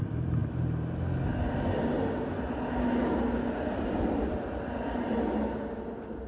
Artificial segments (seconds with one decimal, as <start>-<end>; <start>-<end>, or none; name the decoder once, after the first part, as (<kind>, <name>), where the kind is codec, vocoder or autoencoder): none